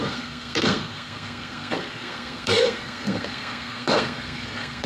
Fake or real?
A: fake